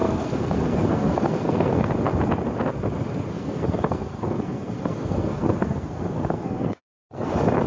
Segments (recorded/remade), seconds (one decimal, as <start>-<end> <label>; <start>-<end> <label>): 0.0-1.9 remade; 1.9-3.3 recorded; 3.3-7.3 remade; 7.3-7.7 recorded